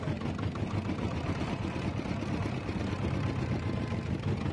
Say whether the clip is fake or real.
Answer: fake